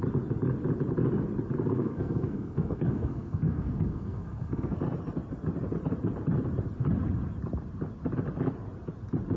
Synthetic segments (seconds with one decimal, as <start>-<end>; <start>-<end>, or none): 1.7-4.8